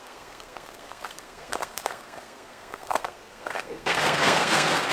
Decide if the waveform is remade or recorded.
remade